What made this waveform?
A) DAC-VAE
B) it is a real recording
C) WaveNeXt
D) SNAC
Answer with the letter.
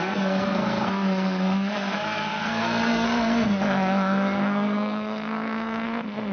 D